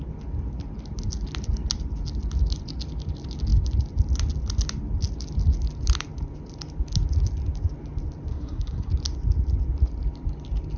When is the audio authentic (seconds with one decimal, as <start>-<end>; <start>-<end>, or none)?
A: 0.0-8.3; 8.9-10.8